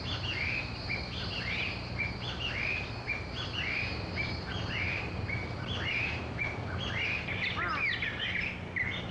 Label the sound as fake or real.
real